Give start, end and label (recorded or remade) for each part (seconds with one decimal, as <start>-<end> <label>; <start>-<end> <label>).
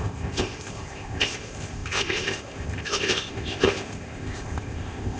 0.0-5.2 remade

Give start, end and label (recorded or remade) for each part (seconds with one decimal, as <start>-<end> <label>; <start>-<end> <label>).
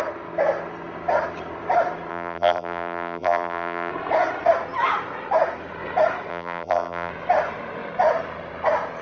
0.0-2.1 recorded; 2.1-3.9 remade; 3.9-6.3 recorded; 6.3-7.1 remade; 7.1-9.0 recorded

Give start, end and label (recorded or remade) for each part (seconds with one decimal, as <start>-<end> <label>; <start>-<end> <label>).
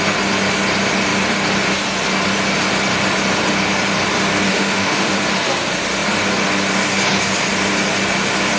0.0-4.5 recorded; 4.5-5.1 remade; 5.1-8.6 recorded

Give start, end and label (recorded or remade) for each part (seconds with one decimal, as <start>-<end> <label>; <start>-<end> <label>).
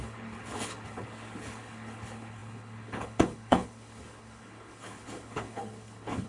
0.0-6.3 remade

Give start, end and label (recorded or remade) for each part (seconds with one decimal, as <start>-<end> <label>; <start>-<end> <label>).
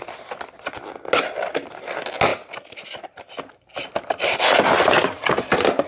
0.0-5.9 recorded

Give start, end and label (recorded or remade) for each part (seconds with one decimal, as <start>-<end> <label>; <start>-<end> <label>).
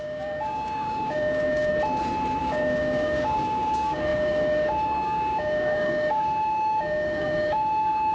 0.0-1.7 remade; 1.7-2.4 recorded; 2.4-8.1 remade